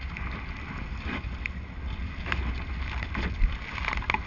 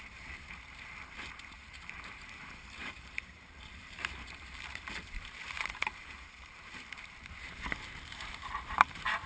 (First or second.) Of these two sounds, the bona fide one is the first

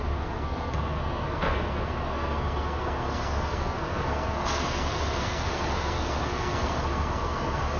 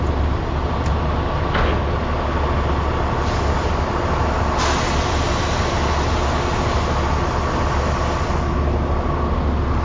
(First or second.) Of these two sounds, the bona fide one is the second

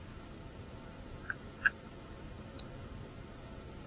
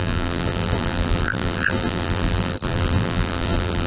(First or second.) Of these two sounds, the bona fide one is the first